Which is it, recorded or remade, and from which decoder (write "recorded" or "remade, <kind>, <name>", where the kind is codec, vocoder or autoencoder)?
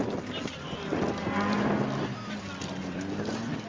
recorded